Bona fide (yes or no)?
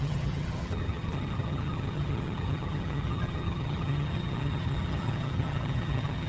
no